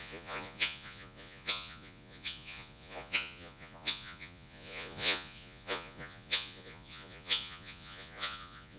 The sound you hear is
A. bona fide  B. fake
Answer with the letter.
B